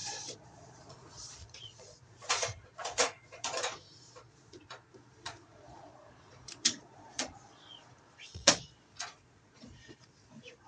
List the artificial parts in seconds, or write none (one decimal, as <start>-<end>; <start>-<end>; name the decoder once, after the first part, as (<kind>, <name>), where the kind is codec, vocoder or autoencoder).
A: 0.0-10.7 (vocoder, Vocos)